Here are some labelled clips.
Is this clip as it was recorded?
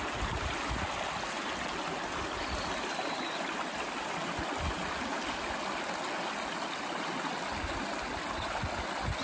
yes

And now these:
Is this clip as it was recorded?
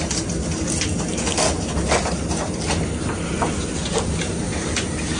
yes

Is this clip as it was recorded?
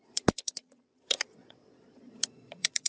no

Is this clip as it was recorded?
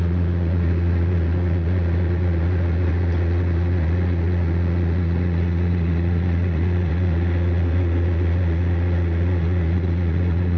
no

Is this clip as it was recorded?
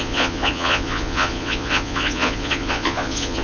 no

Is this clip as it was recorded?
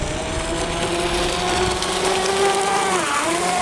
yes